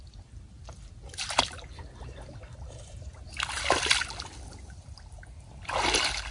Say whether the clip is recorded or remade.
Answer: recorded